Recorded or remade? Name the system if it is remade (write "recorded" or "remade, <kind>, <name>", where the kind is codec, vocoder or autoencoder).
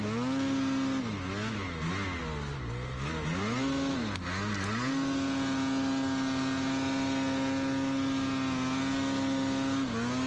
recorded